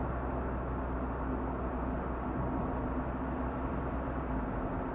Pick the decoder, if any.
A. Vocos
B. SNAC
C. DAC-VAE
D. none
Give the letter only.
D